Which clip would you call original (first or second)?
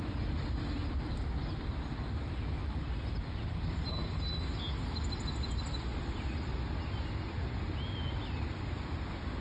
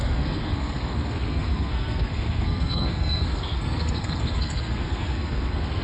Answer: first